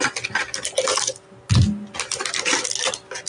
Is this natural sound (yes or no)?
yes